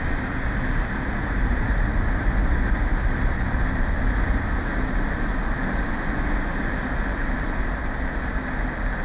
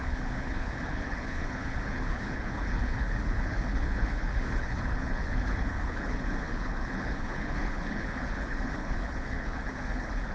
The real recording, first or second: first